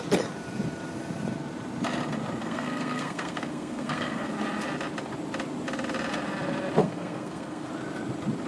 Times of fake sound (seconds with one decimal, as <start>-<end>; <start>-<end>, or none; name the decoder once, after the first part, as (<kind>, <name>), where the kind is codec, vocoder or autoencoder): 2.4-4.3 (codec, SNAC); 6.8-7.7

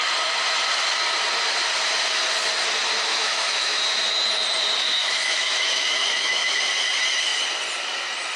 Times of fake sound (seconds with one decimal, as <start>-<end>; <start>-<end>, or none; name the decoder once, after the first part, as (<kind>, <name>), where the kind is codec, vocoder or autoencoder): 3.1-3.8 (autoencoder, DAC-VAE); 4.8-6.6

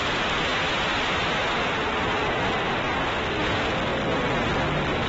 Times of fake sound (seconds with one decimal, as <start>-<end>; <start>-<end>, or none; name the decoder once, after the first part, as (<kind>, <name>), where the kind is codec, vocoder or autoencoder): none

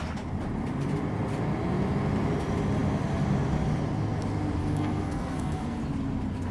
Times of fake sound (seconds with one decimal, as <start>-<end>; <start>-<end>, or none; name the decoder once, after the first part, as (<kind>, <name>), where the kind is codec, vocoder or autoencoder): 4.6-5.8 (codec, SNAC)